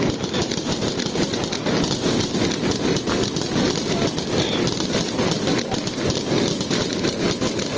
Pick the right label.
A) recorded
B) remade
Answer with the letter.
A